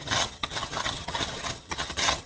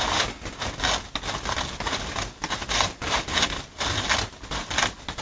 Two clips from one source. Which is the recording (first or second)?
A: second